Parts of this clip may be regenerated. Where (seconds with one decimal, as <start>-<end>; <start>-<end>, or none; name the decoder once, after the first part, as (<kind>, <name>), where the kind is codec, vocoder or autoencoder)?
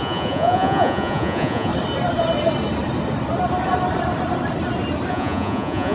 0.0-1.7 (vocoder, Vocos); 5.1-5.9